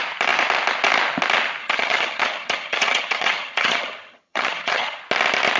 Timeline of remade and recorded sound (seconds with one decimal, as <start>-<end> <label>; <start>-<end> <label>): 0.0-1.6 recorded; 1.6-5.0 remade; 5.0-5.6 recorded

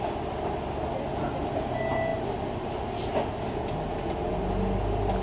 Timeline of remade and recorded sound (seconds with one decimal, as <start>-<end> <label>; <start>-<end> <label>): 0.0-5.2 recorded

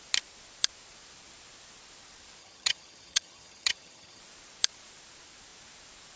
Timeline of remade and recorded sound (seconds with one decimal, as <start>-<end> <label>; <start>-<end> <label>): 0.0-2.4 recorded; 2.4-4.2 remade; 4.2-6.2 recorded

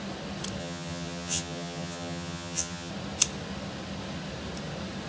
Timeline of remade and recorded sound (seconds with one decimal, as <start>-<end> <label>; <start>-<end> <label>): 0.0-0.6 recorded; 0.6-2.9 remade; 2.9-5.1 recorded

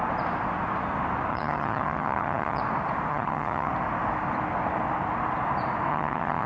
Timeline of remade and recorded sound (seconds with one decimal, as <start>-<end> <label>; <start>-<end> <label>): 0.0-1.3 recorded; 1.3-2.6 remade; 2.6-3.1 recorded; 3.1-3.7 remade; 3.7-5.9 recorded; 5.9-6.5 remade